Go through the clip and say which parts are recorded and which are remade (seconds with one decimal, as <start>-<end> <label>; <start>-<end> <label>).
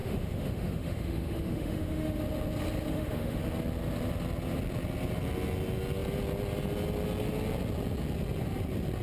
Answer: 0.0-2.2 remade; 2.2-2.9 recorded; 2.9-3.4 remade; 3.4-9.0 recorded